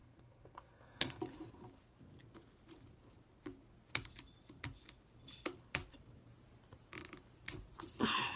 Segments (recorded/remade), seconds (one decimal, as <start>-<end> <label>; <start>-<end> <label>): 0.0-1.2 remade; 1.2-8.4 recorded